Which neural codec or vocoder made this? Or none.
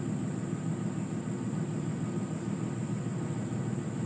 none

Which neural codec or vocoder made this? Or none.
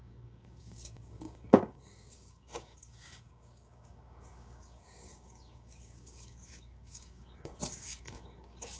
codec, DAC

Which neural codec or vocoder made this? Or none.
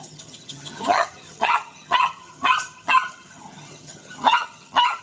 vocoder, HiFi-GAN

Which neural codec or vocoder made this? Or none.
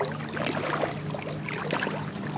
none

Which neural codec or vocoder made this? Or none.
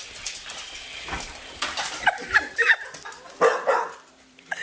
vocoder, BigVGAN v2